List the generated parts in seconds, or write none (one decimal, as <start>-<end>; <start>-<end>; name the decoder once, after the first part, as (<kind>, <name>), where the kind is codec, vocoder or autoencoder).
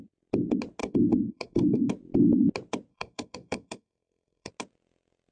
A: 0.8-1.9 (codec, SNAC); 2.9-4.5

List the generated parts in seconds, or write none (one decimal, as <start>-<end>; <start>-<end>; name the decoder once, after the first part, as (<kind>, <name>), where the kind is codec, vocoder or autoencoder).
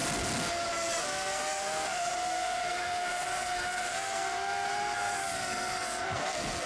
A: 1.0-6.7 (codec, SNAC)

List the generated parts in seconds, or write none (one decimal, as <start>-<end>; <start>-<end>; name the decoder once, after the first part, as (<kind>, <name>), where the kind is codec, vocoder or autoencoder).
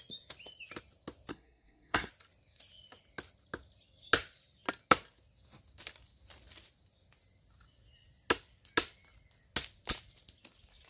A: 1.3-2.1 (codec, SNAC)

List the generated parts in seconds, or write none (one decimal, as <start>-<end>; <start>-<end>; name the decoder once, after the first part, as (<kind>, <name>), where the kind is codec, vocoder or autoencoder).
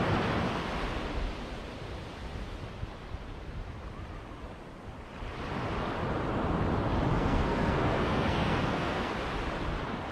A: 7.1-9.1 (codec, SNAC)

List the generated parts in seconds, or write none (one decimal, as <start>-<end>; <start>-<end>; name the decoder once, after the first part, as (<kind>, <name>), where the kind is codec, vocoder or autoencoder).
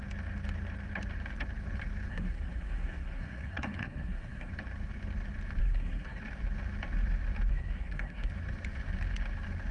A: 2.1-4.5 (codec, SNAC); 5.6-6.2; 7.5-8.3